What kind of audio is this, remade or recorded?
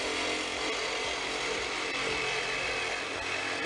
recorded